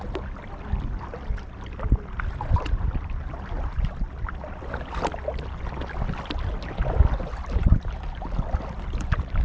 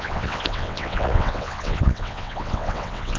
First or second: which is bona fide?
first